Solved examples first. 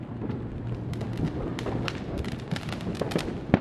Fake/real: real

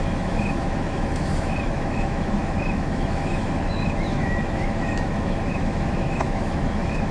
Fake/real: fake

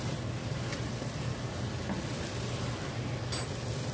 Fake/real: real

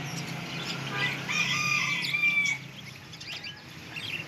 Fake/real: real